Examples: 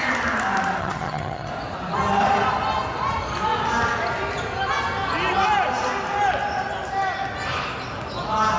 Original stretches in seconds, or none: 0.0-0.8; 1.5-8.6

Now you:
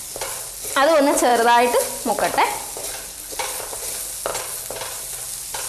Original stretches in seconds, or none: 0.0-5.7

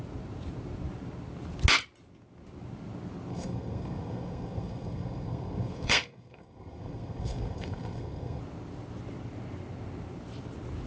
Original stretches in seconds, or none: 0.0-3.3; 8.4-10.9

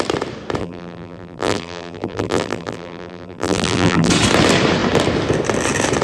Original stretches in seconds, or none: 0.0-0.6; 4.1-6.0

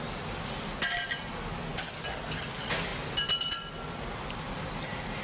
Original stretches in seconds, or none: 0.0-5.2

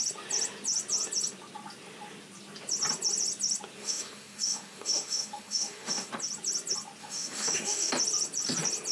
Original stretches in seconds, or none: 0.0-3.8; 6.1-7.0; 7.9-8.9